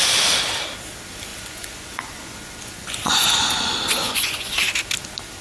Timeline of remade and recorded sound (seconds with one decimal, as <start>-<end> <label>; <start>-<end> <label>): 0.0-1.3 recorded; 1.3-4.5 remade; 4.5-5.4 recorded